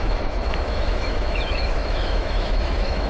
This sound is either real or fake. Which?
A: fake